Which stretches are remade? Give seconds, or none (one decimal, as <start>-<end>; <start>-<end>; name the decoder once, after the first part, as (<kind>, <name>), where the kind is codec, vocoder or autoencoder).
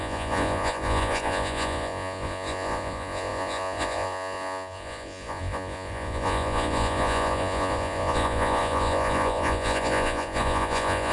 0.0-11.1 (vocoder, Vocos)